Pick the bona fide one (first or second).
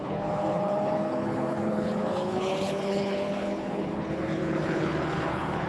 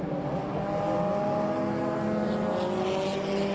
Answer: second